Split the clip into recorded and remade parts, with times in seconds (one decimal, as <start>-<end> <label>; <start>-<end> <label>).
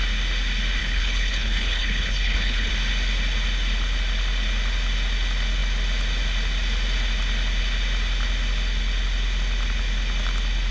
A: 0.0-0.8 recorded; 0.8-2.7 remade; 2.7-10.7 recorded